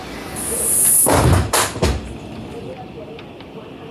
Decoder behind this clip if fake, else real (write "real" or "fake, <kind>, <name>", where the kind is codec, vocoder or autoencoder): real